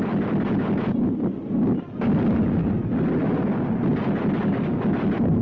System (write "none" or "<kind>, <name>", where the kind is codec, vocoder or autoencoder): none